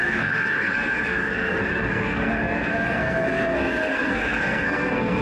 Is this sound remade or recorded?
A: remade